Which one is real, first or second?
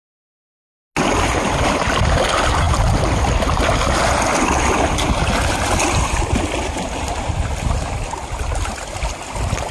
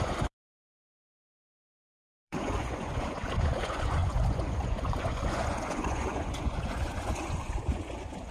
first